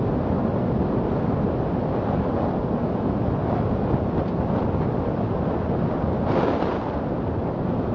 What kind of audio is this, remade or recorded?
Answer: recorded